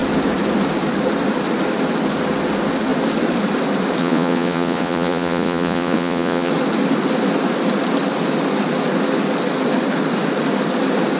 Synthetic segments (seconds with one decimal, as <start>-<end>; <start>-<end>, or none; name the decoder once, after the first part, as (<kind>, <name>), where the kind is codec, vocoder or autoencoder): 4.0-6.5 (vocoder, Vocos)